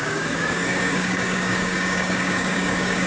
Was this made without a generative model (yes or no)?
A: no